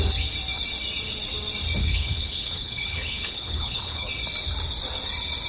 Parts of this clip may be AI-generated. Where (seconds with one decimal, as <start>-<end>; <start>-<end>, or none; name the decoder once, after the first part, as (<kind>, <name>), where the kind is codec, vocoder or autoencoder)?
1.8-4.1 (codec, HILCodec)